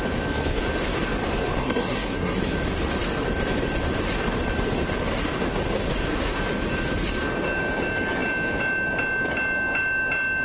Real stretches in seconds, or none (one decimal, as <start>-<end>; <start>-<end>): 0.0-1.6; 2.4-10.4